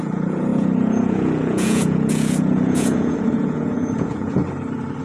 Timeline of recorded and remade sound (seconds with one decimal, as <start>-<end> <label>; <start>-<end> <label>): 0.0-4.4 remade; 4.4-5.0 recorded